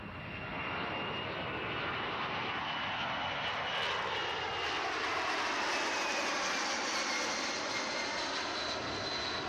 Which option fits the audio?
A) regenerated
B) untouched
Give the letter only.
B